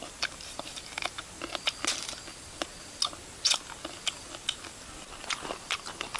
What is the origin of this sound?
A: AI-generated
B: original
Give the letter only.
B